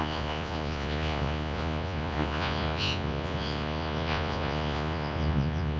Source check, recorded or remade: remade